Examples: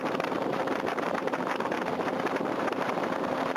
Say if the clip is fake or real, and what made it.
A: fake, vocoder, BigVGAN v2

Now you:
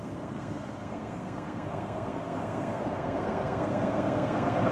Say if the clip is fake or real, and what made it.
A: fake, codec, SNAC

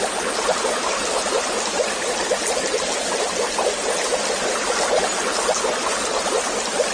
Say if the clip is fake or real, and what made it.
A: real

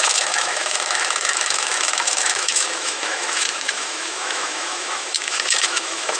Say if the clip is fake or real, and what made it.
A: fake, autoencoder, DAC-VAE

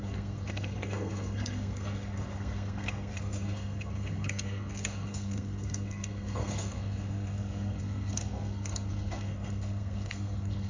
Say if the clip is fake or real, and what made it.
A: fake, codec, SNAC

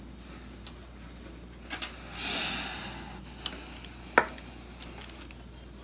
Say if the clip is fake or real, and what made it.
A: real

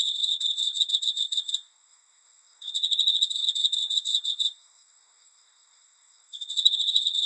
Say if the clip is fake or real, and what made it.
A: fake, codec, SNAC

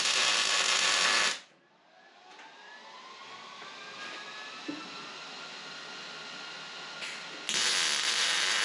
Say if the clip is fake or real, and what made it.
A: real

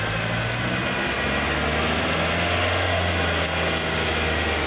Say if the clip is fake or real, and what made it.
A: real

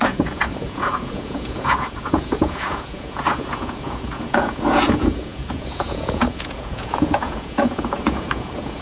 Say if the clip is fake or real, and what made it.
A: fake, vocoder, Vocos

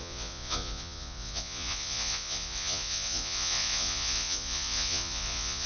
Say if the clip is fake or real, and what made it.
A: fake, vocoder, Vocos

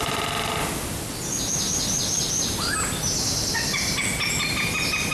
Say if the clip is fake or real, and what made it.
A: real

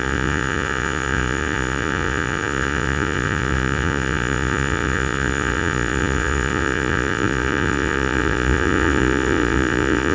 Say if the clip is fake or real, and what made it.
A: fake, vocoder, Vocos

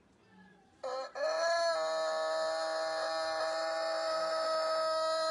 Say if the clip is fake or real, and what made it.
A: real